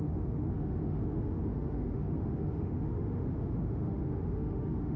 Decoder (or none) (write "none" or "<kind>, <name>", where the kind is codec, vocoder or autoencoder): autoencoder, DAC-VAE